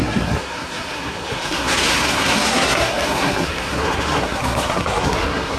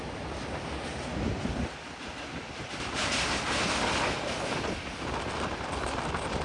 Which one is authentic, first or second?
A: second